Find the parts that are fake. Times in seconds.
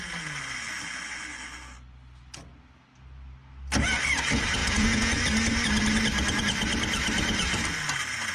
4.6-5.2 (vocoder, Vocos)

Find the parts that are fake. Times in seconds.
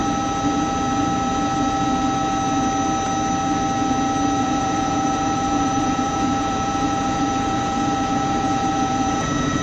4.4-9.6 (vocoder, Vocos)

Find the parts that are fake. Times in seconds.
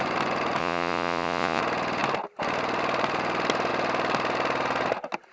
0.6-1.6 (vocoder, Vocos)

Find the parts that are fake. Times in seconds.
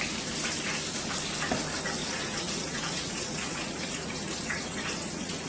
2.0-5.5 (vocoder, Vocos)